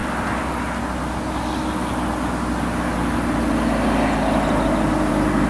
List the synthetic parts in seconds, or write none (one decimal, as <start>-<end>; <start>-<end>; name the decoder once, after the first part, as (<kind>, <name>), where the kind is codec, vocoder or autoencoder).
none